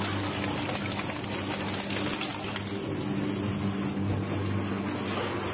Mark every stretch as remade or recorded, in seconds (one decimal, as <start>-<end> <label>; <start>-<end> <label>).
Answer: 0.0-5.5 recorded